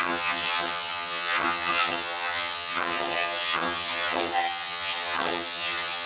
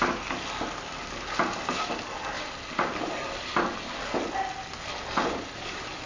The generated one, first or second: first